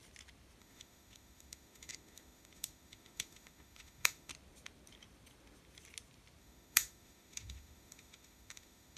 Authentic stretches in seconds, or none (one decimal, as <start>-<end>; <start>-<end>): 0.0-0.6; 4.3-6.4